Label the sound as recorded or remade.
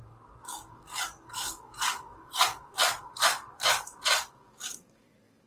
remade